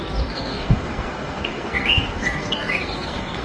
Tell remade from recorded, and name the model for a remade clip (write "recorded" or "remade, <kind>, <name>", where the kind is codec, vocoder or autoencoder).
remade, codec, SNAC